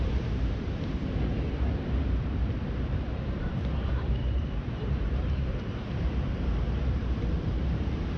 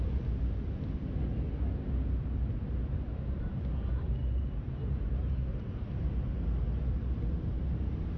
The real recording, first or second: second